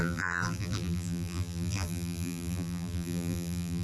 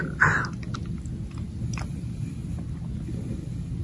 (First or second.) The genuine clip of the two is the second